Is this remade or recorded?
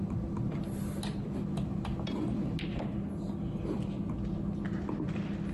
recorded